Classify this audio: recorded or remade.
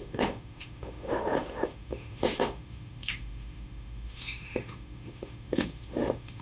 remade